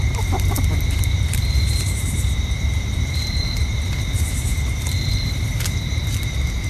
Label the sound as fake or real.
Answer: fake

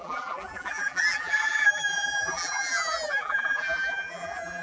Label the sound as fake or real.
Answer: fake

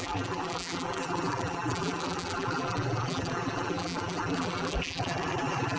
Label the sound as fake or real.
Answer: fake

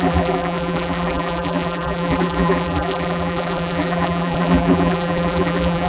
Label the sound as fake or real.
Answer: fake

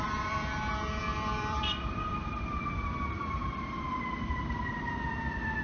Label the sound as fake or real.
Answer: fake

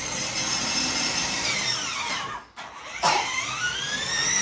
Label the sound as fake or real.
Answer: fake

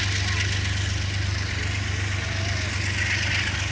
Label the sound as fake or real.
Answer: real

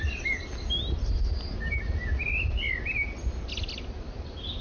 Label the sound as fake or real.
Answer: real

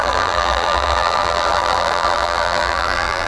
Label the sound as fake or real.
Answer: fake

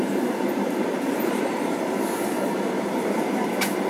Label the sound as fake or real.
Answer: fake